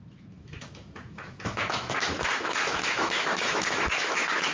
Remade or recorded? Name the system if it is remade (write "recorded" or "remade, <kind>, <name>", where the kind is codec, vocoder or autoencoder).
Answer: remade, autoencoder, DAC-VAE